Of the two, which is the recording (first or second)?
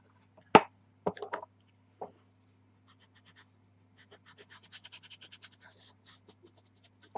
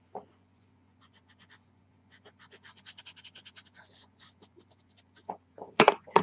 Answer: first